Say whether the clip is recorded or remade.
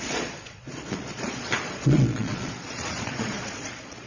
remade